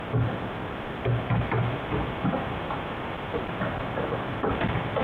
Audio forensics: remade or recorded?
remade